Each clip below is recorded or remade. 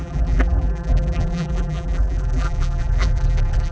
remade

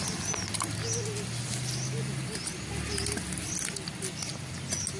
recorded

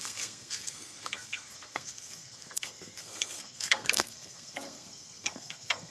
remade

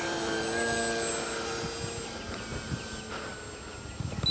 recorded